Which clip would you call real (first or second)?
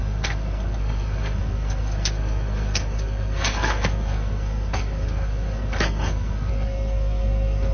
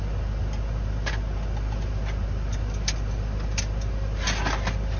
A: second